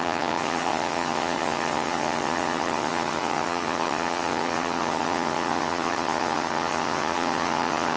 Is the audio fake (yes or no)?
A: yes